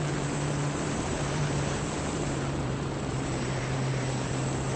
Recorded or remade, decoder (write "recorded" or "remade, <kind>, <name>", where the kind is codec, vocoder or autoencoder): remade, vocoder, BigVGAN v2